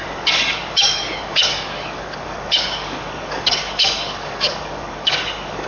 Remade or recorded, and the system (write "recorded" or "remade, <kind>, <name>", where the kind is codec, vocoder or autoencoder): remade, codec, DAC